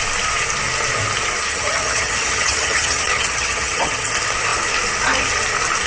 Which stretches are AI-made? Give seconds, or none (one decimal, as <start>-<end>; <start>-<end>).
1.5-4.1